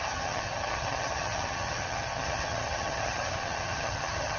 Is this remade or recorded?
remade